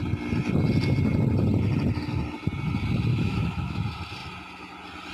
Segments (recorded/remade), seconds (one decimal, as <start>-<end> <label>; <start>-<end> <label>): 0.0-3.1 recorded; 3.1-3.8 remade; 3.8-5.1 recorded